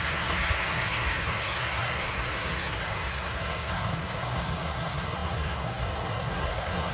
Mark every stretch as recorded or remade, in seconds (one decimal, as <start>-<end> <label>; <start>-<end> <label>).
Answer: 0.0-6.9 remade